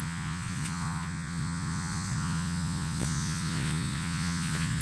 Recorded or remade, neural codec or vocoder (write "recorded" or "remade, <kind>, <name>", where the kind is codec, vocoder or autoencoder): remade, vocoder, Vocos